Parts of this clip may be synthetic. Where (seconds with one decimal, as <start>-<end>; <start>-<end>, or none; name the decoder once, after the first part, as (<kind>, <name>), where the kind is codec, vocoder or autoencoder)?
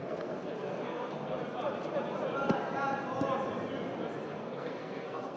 0.0-1.4 (codec, SNAC); 4.4-5.4